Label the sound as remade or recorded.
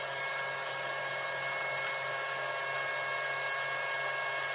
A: recorded